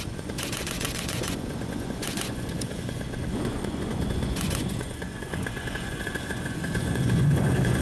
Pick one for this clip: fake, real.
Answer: fake